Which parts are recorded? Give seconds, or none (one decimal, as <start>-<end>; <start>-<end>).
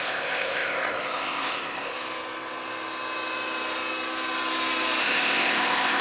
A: 1.9-5.0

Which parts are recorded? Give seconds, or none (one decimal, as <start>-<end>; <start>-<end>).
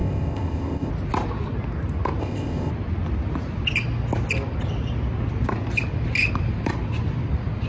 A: 0.9-2.2; 2.7-7.7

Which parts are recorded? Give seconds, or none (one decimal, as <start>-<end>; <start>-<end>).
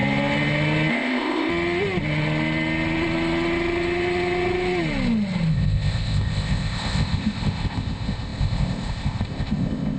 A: 0.0-0.9; 1.5-5.5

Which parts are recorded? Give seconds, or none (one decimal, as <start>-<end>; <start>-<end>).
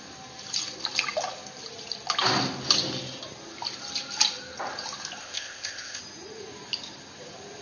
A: 0.0-5.2; 6.0-7.6